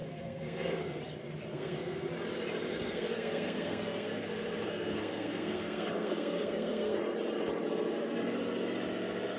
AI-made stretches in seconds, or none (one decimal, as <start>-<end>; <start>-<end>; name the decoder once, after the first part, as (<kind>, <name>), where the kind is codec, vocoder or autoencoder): 0.0-1.0 (codec, SNAC); 1.5-2.0; 2.7-7.0